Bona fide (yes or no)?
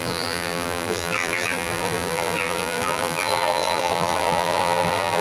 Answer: no